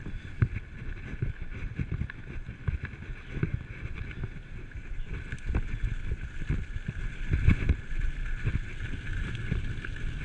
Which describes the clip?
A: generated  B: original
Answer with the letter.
B